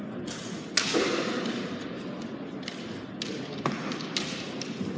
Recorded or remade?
recorded